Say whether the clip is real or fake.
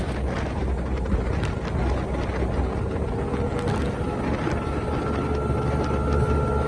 real